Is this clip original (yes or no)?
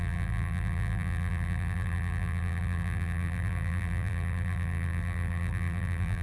no